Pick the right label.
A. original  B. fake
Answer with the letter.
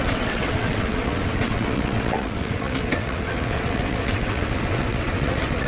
B